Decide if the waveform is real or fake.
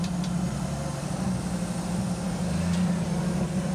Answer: fake